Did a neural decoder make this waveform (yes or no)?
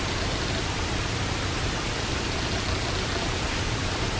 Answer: no